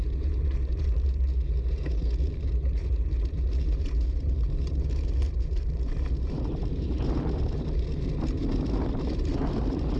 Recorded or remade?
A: remade